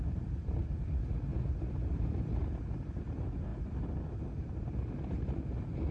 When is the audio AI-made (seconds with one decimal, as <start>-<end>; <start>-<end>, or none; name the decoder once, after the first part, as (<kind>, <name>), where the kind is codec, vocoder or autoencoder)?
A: none